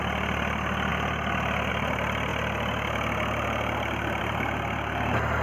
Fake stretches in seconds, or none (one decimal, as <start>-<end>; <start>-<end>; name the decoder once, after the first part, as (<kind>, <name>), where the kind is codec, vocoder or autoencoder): none